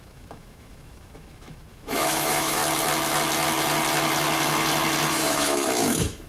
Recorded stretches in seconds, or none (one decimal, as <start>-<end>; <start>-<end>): 2.6-5.1